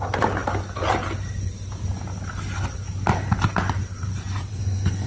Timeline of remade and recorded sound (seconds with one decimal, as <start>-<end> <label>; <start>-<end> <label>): 0.0-4.5 recorded; 4.5-5.1 remade